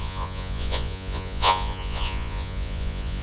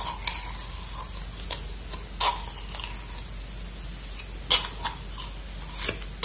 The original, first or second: second